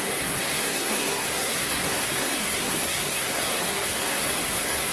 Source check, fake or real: fake